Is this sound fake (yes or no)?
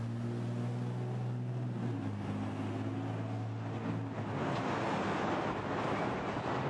no